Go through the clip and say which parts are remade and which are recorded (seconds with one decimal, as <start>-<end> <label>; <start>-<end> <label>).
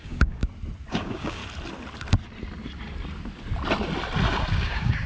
0.0-0.4 remade; 0.4-0.9 recorded; 0.9-1.4 remade; 1.4-4.5 recorded; 4.5-5.1 remade